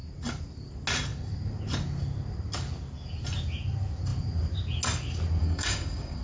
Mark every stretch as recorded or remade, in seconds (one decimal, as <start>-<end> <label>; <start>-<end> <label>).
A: 0.0-5.4 recorded; 5.4-6.2 remade